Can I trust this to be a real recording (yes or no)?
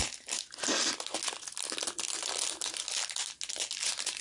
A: yes